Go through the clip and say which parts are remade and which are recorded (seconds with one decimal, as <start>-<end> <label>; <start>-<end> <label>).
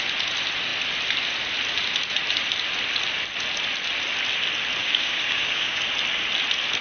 0.0-4.8 recorded; 4.8-5.8 remade; 5.8-6.8 recorded